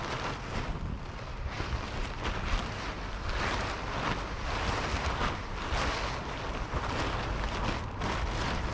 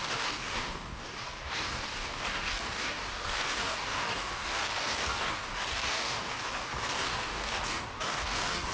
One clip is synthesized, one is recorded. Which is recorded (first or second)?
first